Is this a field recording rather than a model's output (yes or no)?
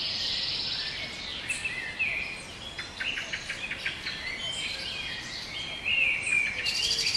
yes